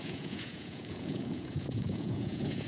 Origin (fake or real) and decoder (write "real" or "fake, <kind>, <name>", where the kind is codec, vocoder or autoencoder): fake, vocoder, Vocos